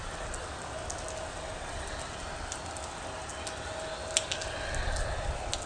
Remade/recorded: recorded